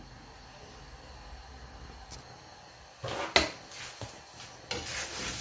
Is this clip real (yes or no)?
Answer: yes